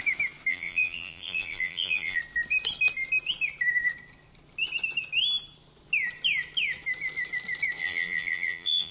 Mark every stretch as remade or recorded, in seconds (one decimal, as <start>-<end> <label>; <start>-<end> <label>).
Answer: 0.0-0.5 recorded; 0.5-2.2 remade; 2.2-7.8 recorded; 7.8-8.9 remade